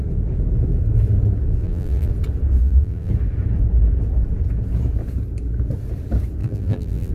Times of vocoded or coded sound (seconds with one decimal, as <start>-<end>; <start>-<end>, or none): 1.6-2.1; 2.6-3.1; 6.4-7.1